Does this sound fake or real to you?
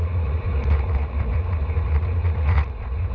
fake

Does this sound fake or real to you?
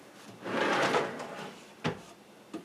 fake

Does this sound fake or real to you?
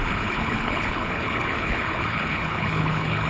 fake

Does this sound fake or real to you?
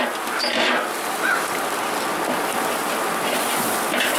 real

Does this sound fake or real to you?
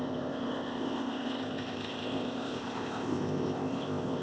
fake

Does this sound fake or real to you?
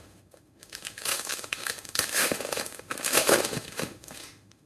fake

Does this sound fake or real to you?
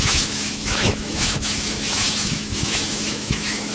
fake